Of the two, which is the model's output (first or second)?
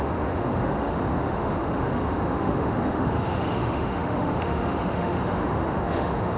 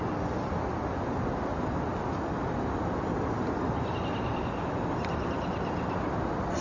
first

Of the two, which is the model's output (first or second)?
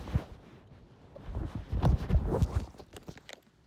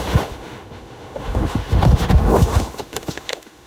second